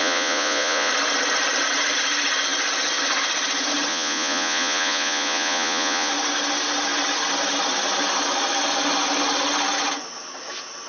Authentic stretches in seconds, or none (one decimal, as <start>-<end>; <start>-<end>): 0.9-3.9; 6.1-10.9